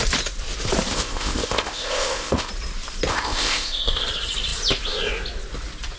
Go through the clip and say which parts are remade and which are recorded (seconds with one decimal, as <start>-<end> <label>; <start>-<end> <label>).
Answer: 0.0-0.9 recorded; 0.9-2.5 remade; 2.5-3.1 recorded; 3.1-4.0 remade; 4.0-6.0 recorded